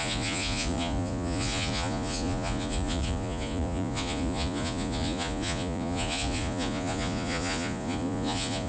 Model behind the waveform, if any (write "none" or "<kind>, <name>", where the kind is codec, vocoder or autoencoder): vocoder, Vocos